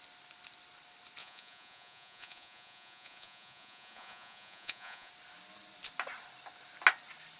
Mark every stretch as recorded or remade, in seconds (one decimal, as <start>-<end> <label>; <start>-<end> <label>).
0.0-1.2 recorded; 1.2-5.1 remade; 5.1-7.4 recorded